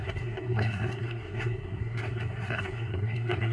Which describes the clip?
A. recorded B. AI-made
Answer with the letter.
B